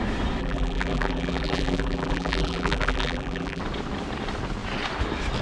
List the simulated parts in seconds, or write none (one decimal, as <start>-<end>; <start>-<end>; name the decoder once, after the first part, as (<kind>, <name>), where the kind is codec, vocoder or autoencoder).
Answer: 0.4-3.6 (vocoder, BigVGAN v2)